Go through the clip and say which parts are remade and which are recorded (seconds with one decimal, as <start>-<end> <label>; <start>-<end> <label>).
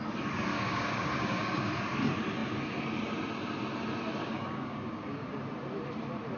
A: 0.0-0.5 recorded; 0.5-1.8 remade; 1.8-4.2 recorded; 4.2-5.3 remade; 5.3-6.4 recorded